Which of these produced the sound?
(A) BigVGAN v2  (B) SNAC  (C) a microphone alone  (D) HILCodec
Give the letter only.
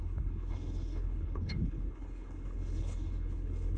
D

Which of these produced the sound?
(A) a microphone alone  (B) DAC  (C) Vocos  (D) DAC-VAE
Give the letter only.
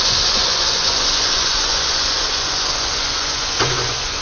C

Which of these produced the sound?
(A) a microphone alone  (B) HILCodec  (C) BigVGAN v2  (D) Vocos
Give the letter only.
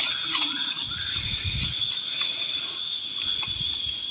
D